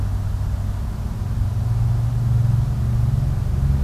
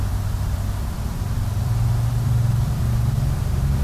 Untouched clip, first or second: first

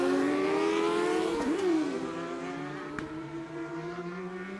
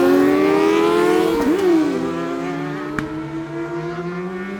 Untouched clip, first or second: second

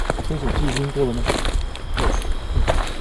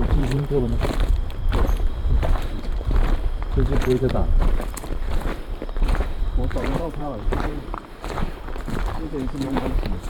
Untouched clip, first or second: first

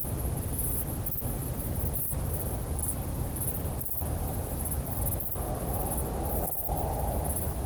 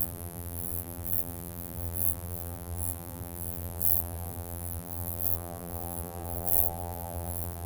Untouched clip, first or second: first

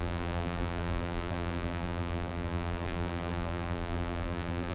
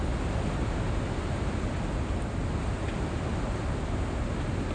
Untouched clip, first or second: second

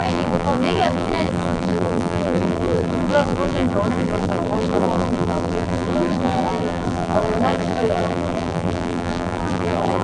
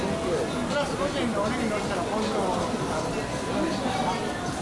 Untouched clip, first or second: second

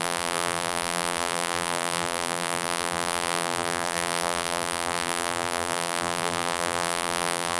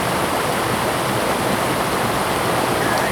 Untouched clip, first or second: second